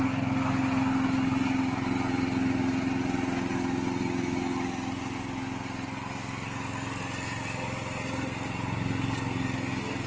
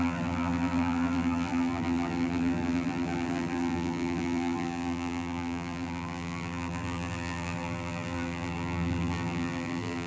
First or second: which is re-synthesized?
second